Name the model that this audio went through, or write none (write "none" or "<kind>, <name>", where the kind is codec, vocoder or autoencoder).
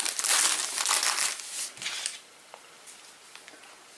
none